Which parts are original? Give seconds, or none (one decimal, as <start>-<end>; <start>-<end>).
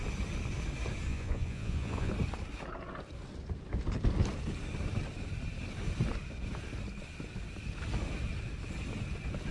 0.0-1.1; 2.1-9.5